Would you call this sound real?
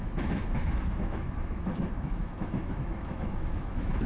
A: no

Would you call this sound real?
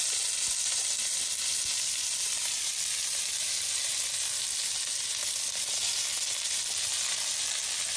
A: yes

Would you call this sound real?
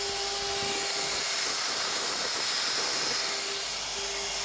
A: yes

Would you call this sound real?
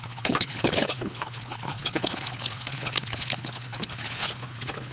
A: no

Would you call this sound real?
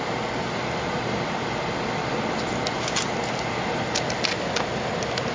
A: yes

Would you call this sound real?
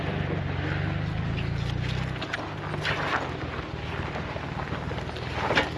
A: yes